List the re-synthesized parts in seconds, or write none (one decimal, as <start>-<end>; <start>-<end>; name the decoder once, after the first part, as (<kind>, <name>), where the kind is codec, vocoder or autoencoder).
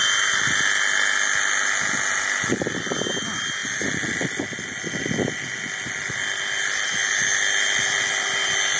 none